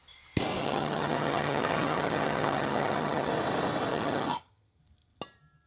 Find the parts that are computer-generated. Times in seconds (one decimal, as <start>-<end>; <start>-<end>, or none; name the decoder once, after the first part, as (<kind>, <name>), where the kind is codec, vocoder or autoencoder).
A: 0.6-3.3 (vocoder, HiFi-GAN); 3.9-4.8